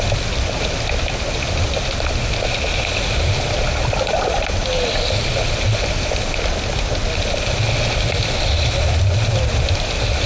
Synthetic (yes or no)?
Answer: no